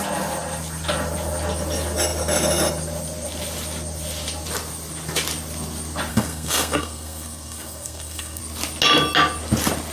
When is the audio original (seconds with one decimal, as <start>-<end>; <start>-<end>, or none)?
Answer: 0.0-6.1; 8.4-9.9